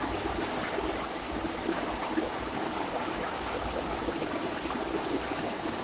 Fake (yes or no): no